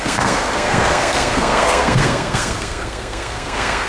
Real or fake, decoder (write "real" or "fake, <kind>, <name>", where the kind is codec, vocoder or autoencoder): fake, codec, SNAC